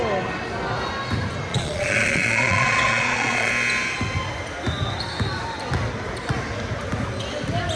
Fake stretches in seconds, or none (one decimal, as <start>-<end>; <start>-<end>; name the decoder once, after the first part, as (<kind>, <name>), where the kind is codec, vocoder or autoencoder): 1.5-3.5 (vocoder, Vocos)